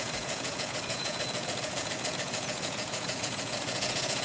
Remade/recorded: remade